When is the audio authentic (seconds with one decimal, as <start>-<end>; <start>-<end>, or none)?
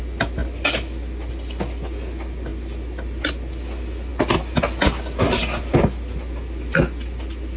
0.0-7.6